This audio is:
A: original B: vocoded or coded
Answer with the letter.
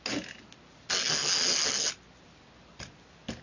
A